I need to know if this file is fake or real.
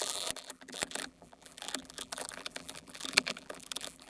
fake